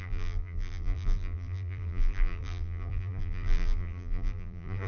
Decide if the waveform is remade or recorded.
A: remade